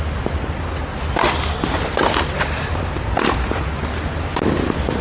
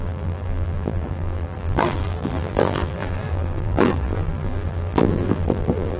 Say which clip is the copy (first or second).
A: second